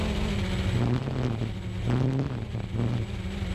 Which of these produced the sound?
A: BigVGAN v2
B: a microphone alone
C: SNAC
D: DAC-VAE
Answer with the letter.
B